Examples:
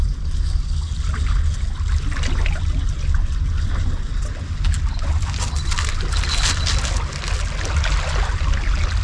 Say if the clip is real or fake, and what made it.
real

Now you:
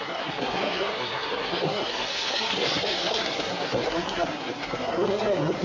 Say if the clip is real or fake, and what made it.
fake, codec, SNAC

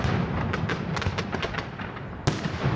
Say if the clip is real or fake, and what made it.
real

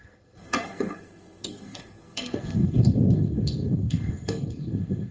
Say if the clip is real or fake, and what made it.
fake, codec, SNAC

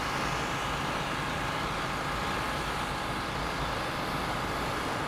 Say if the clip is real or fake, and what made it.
real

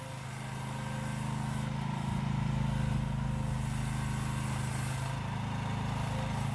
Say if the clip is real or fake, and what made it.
real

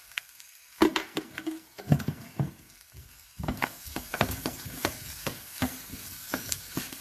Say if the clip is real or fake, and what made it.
fake, codec, SNAC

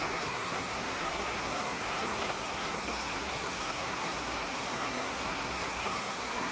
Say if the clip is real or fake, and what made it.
fake, codec, SNAC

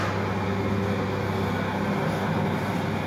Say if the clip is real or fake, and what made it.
real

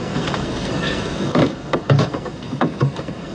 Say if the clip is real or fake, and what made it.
fake, codec, SNAC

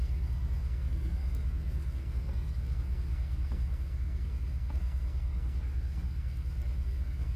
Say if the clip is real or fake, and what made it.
fake, codec, SNAC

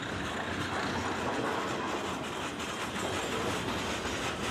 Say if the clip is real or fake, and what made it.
real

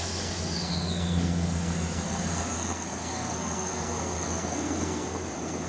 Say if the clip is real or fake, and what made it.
fake, codec, SNAC